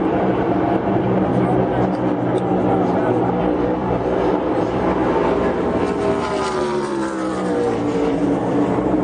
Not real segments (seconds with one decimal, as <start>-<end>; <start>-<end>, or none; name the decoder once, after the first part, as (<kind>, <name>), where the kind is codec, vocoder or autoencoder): 0.0-1.3 (vocoder, BigVGAN v2); 2.7-5.0; 6.2-9.0